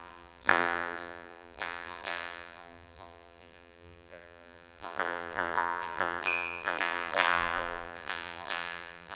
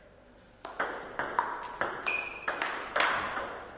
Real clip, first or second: second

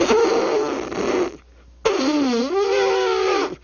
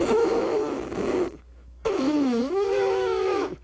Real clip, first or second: first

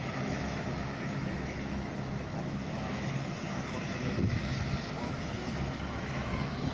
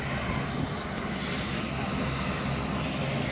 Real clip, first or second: second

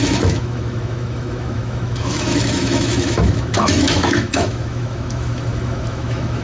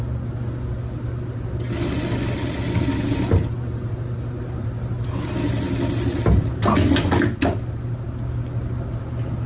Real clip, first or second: second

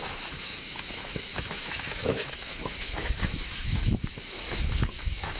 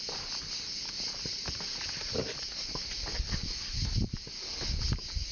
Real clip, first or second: second